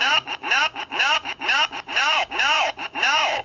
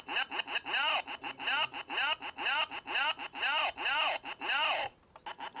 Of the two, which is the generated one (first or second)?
first